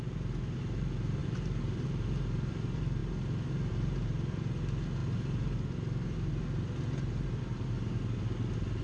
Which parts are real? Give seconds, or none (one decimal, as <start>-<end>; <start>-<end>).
0.0-8.8